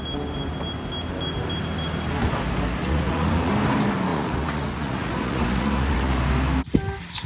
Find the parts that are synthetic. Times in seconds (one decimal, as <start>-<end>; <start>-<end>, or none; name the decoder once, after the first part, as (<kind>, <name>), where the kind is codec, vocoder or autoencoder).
2.8-3.5 (vocoder, Vocos); 4.1-6.2